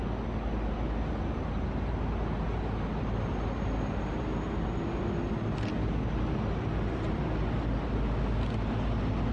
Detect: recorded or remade recorded